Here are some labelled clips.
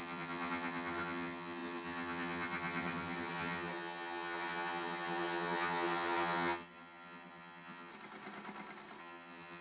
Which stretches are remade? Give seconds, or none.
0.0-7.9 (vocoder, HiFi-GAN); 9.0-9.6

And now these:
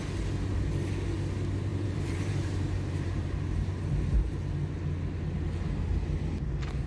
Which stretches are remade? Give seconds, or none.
1.7-3.7 (vocoder, BigVGAN v2)

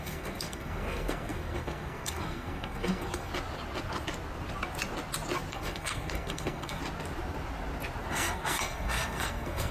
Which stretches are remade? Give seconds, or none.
0.0-3.3 (codec, SNAC); 5.5-6.8; 8.1-9.7

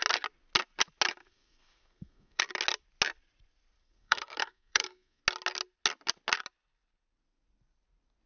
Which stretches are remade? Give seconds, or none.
1.2-2.4 (codec, SNAC); 3.8-5.2